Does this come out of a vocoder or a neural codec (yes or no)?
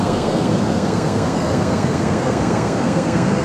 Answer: yes